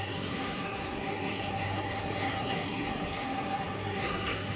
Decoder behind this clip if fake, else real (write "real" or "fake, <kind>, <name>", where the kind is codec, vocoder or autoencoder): fake, codec, SNAC